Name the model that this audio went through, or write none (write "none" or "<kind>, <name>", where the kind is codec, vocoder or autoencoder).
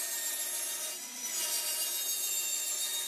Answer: none